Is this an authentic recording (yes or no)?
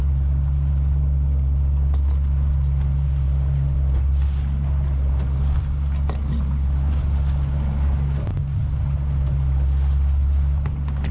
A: yes